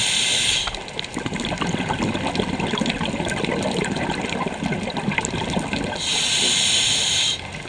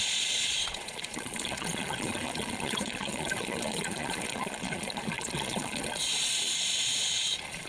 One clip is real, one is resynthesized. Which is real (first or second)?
first